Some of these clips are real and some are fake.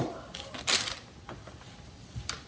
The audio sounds real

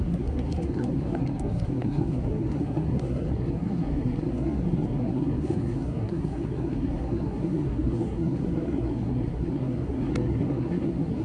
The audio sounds fake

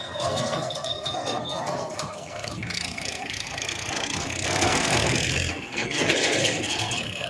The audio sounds fake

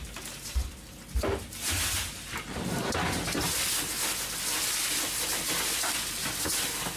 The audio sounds real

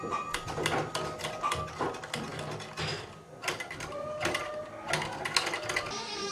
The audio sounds real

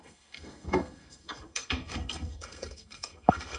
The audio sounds fake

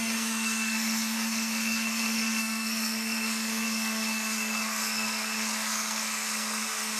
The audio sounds fake